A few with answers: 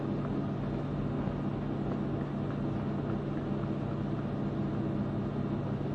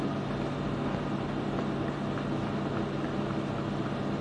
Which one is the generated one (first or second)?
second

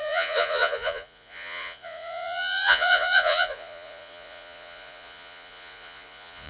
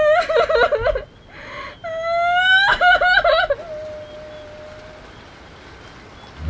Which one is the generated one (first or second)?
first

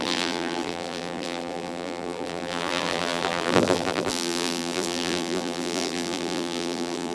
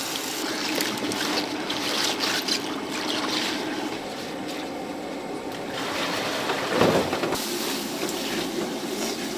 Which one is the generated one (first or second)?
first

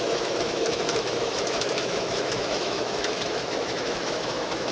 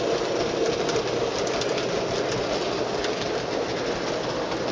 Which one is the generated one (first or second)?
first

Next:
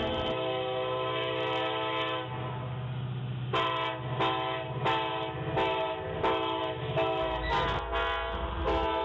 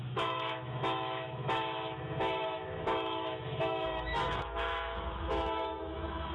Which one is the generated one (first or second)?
second